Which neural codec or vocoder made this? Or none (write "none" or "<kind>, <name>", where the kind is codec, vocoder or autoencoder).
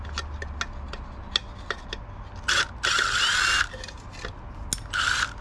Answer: none